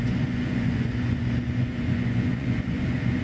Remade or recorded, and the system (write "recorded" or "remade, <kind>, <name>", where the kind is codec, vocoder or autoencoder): remade, vocoder, Vocos